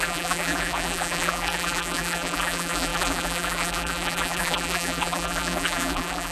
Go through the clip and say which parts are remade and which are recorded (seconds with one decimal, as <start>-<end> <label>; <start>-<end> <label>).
0.0-6.3 remade